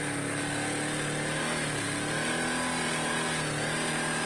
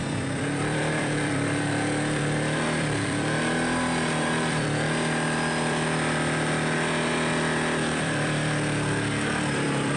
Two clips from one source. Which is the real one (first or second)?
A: first